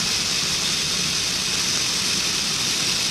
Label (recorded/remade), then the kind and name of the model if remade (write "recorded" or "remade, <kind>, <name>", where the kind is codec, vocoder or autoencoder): recorded